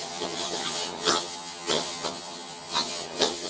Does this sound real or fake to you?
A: fake